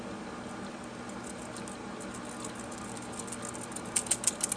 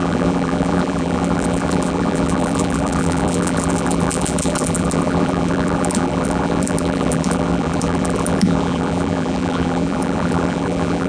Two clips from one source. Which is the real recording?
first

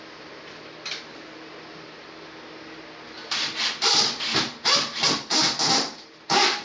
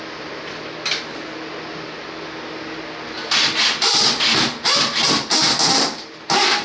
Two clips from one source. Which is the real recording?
second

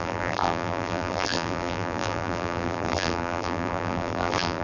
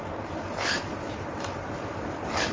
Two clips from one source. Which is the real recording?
second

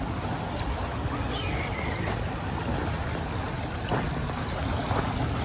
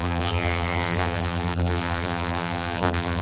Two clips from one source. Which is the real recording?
first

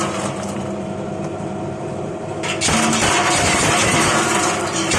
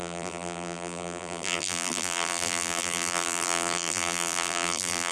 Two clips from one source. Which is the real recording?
first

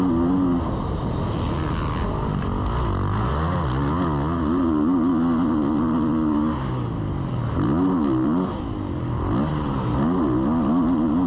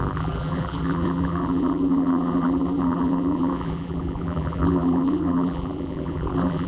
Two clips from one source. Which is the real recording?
first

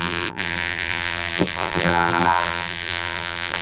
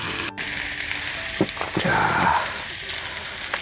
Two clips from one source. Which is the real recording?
second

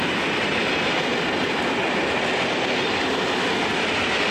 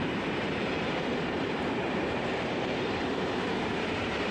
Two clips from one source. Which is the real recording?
first